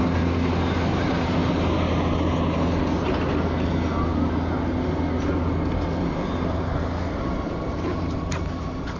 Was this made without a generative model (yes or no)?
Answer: yes